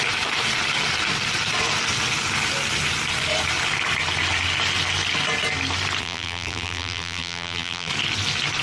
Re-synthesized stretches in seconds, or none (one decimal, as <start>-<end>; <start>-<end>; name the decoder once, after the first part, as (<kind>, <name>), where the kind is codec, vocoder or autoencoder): 6.0-7.9 (vocoder, BigVGAN v2)